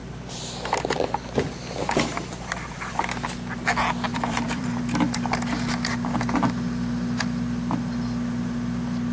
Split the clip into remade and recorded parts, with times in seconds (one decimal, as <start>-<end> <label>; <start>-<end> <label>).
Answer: 0.0-2.1 recorded; 2.1-2.9 remade; 2.9-4.1 recorded; 4.1-4.8 remade; 4.8-9.1 recorded